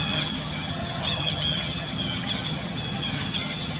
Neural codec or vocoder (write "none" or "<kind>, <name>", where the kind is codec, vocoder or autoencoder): vocoder, HiFi-GAN